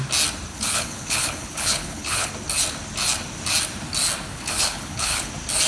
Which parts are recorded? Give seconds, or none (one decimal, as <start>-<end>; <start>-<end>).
0.0-0.5; 2.3-4.3; 5.3-5.7